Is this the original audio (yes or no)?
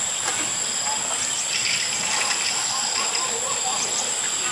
no